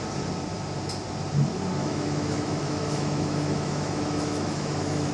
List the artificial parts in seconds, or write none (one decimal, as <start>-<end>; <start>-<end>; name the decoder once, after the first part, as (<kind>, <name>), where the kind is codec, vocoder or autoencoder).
1.8-5.1 (autoencoder, DAC-VAE)